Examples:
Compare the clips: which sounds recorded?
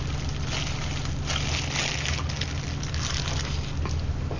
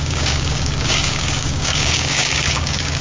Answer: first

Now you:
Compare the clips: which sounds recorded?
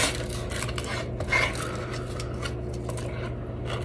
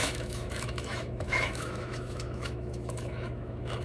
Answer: first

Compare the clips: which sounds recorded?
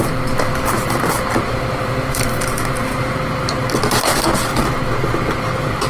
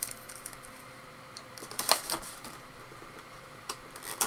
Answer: first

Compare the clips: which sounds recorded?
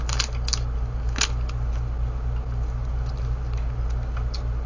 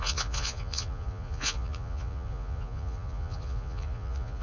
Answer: first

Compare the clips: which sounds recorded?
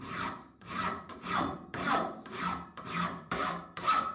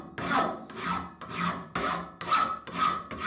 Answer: second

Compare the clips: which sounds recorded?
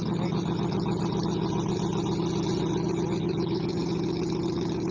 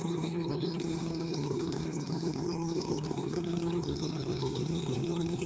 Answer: first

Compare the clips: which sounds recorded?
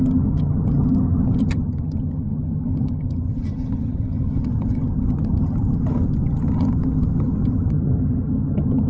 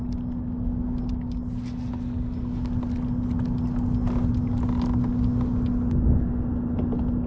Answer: second